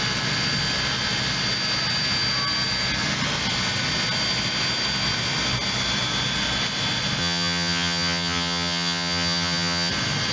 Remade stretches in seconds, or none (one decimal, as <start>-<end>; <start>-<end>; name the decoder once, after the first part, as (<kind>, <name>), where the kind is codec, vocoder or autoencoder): 7.2-9.9 (vocoder, HiFi-GAN)